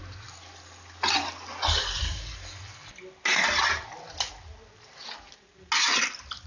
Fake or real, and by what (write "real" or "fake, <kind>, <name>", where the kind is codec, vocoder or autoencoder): real